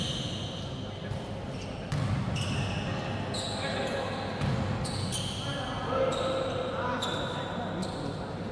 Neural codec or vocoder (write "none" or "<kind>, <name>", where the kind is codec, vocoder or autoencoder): none